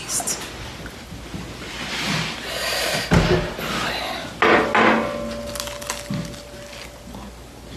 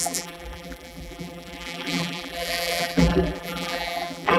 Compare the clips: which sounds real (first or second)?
first